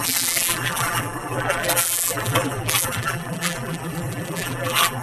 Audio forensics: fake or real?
fake